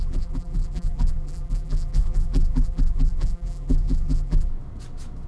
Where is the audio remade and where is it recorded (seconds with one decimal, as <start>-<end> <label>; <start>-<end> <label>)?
0.0-4.5 remade; 4.5-5.3 recorded